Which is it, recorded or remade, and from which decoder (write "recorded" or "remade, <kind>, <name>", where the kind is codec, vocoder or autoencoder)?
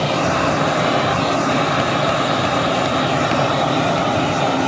recorded